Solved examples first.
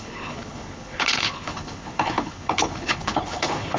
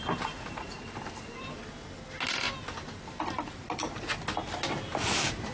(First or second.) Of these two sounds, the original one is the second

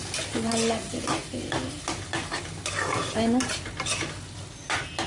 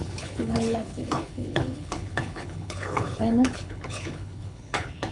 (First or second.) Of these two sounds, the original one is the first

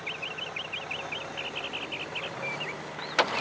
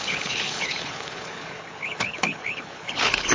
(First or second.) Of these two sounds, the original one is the first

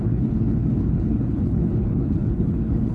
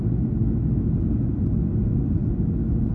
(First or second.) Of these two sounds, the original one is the second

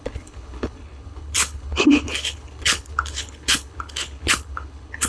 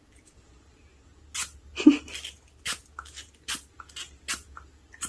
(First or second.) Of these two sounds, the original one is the second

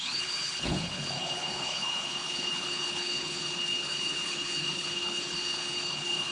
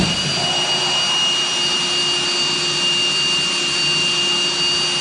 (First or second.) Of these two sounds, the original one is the second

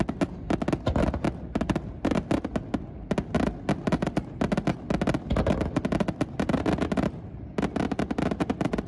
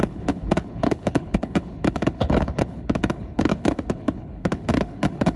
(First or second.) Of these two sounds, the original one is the first